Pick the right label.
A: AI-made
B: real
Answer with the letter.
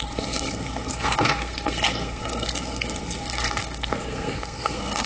A